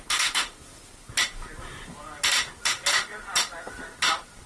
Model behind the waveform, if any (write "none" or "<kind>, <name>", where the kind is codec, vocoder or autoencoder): none